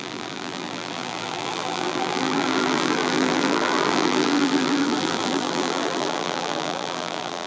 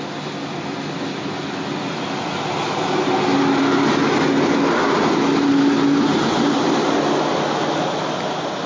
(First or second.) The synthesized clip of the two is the first